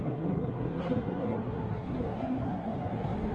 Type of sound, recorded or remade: remade